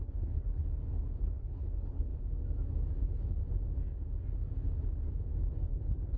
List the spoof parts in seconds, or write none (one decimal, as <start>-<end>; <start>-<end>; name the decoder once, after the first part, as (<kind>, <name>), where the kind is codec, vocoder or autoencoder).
0.0-0.6 (codec, HILCodec); 1.2-2.1; 3.0-3.4; 5.7-6.2